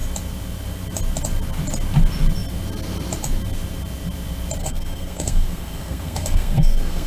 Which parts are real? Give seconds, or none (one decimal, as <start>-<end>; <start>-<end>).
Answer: 0.0-4.6